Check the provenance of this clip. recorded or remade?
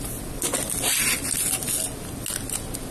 recorded